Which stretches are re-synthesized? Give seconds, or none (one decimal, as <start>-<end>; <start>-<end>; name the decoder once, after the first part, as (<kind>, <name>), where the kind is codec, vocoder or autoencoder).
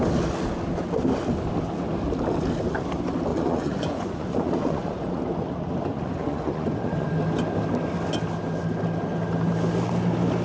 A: 3.3-5.2 (vocoder, Vocos); 5.9-7.1